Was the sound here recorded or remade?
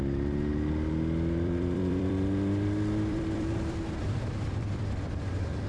remade